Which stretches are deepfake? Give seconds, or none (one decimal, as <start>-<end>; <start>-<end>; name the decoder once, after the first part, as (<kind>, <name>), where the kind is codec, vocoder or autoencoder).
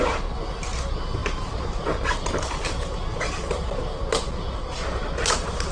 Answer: none